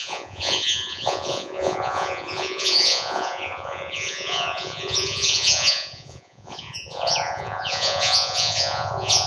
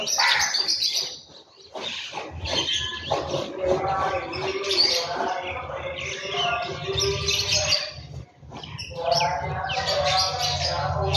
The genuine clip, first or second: second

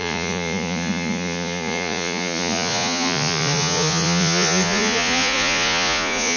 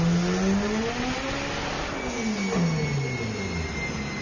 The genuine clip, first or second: second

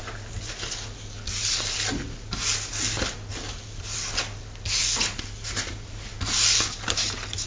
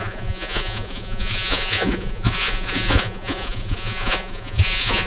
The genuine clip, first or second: first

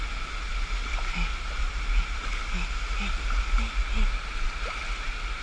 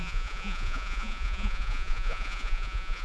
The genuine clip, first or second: first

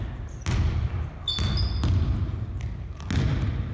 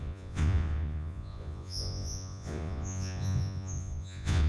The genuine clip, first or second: first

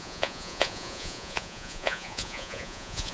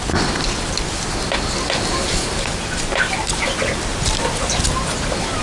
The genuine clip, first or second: second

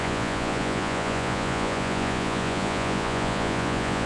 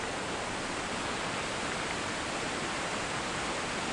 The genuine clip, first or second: second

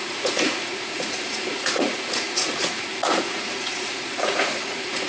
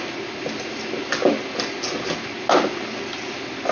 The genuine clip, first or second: second